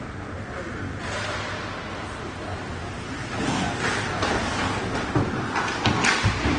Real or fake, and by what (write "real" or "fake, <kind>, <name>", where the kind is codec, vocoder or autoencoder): real